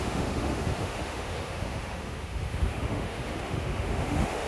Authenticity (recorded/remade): remade